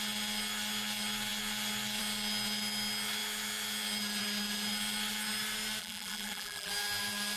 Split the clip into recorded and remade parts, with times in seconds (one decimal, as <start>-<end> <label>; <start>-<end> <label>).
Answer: 0.0-5.8 recorded; 5.8-6.7 remade; 6.7-7.4 recorded